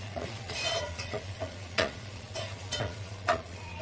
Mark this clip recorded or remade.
remade